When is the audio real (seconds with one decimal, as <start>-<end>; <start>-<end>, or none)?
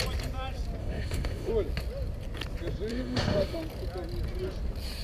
0.0-0.8; 1.5-2.9; 3.6-5.0